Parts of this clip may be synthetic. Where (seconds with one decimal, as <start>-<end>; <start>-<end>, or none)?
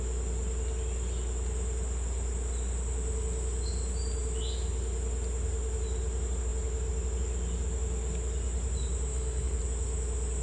9.1-9.6